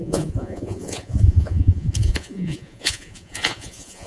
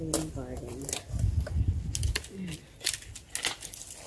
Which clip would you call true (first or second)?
second